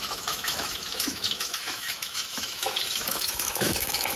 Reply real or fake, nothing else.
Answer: fake